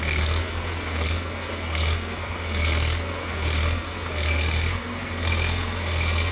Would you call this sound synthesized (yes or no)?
yes